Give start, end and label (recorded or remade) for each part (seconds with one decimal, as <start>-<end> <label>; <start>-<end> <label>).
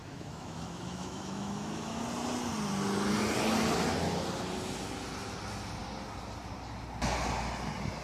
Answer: 0.0-2.0 remade; 2.0-8.0 recorded